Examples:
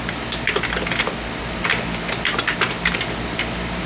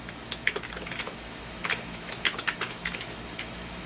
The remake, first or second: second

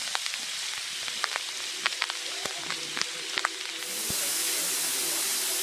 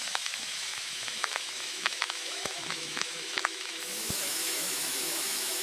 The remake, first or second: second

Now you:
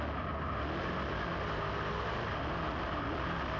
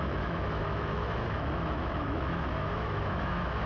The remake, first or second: second